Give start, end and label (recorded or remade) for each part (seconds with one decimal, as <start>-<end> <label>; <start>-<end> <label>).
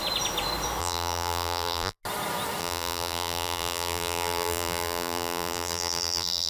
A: 0.0-0.8 recorded; 0.8-2.0 remade; 2.0-2.6 recorded; 2.6-6.5 remade